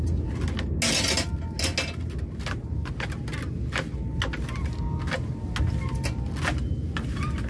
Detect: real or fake real